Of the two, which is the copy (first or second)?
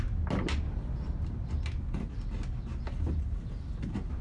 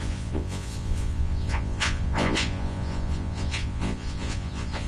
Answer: second